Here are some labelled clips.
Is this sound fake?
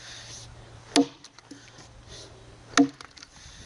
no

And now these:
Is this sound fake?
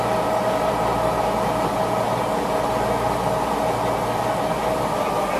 no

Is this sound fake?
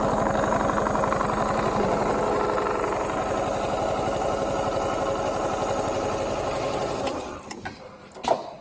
no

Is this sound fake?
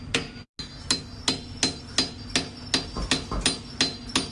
no